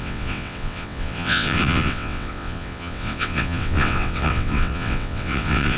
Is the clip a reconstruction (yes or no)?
yes